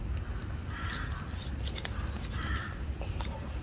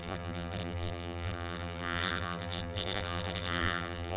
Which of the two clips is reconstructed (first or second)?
second